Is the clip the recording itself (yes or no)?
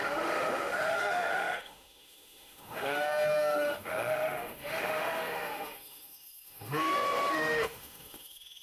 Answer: no